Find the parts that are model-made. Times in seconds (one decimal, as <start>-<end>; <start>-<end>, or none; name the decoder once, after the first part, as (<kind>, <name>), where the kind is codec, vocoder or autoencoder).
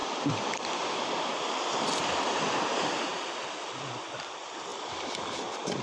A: 0.0-0.9 (vocoder, BigVGAN v2); 3.1-4.3; 4.7-5.8